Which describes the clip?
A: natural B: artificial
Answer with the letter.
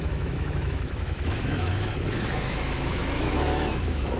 B